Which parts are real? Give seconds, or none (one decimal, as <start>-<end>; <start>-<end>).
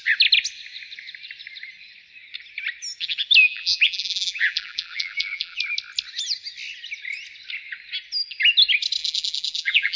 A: 0.0-3.4; 5.6-9.0